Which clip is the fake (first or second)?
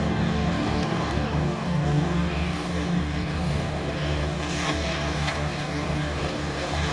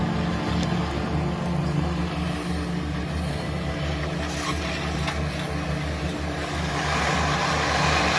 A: first